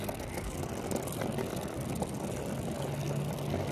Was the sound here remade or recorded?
recorded